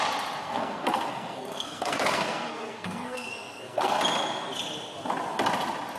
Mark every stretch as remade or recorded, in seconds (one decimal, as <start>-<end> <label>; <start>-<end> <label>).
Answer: 0.0-0.4 recorded; 0.4-4.0 remade; 4.0-6.0 recorded